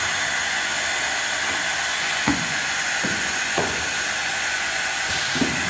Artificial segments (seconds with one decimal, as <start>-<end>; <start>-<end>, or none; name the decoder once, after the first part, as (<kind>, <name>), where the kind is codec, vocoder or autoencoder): 0.4-0.9 (vocoder, Vocos); 1.9-3.8; 4.2-5.1